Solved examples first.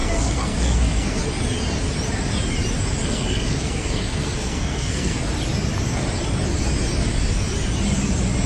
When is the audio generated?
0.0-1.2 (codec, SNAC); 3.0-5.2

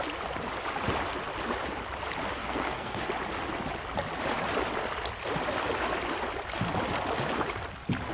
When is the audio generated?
2.3-3.1 (codec, SNAC)

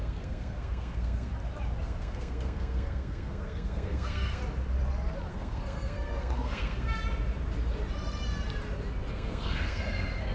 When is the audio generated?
0.0-1.3 (codec, SNAC); 1.8-4.4; 5.3-7.0; 9.1-10.3

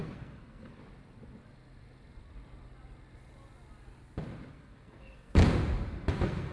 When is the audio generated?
0.0-0.8 (codec, SNAC); 4.5-5.4; 6.1-6.5